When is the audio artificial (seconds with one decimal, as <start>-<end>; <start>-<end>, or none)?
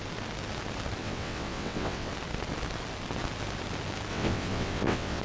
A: 1.0-2.1; 4.1-5.2